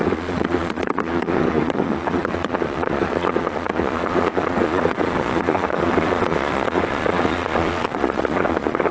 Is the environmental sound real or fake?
fake